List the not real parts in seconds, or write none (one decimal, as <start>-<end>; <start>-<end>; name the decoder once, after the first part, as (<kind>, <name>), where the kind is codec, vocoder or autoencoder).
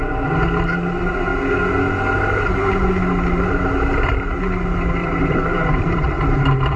5.0-6.8 (vocoder, BigVGAN v2)